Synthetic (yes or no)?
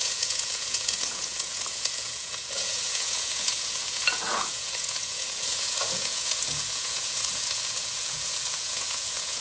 yes